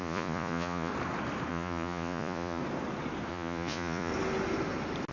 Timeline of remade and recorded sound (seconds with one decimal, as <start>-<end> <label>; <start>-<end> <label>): 0.0-0.9 remade; 0.9-1.5 recorded; 1.5-2.6 remade; 2.6-3.3 recorded; 3.3-4.1 remade; 4.1-5.1 recorded